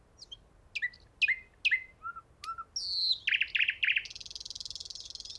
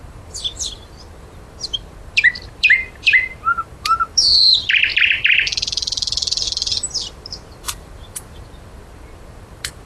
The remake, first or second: second